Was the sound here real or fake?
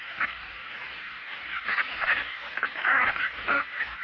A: fake